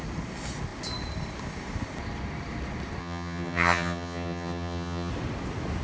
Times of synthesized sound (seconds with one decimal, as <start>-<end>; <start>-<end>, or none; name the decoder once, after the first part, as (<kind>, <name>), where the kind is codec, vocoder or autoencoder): 3.0-5.1 (vocoder, HiFi-GAN)